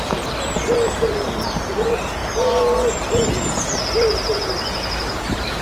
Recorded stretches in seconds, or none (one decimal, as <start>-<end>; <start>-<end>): none